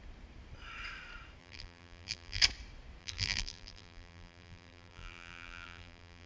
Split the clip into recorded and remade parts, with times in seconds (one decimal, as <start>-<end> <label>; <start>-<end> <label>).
0.0-1.4 recorded; 1.4-2.4 remade; 2.4-3.0 recorded; 3.0-6.3 remade